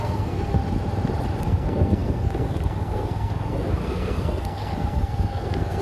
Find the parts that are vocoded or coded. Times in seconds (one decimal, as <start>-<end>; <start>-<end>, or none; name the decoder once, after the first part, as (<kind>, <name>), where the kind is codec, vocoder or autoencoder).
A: 0.0-0.6 (codec, SNAC); 1.4-5.8